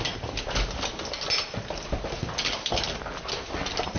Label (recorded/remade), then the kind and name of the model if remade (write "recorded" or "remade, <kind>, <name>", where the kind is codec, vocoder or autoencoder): recorded